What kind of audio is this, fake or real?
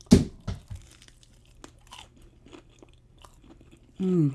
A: real